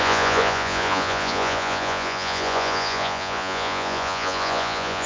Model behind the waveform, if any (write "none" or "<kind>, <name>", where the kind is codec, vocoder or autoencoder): vocoder, Vocos